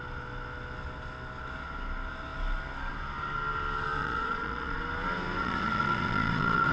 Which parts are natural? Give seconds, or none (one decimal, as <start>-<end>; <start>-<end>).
0.0-4.0; 4.8-5.4